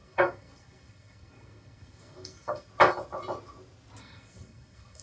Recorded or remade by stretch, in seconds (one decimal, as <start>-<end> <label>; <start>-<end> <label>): 0.0-2.7 remade; 2.7-4.0 recorded; 4.0-5.0 remade